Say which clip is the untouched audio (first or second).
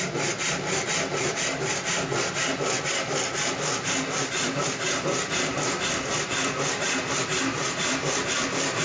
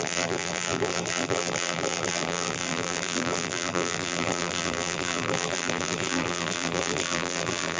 first